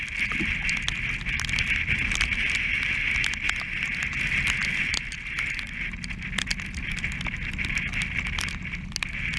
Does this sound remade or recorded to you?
recorded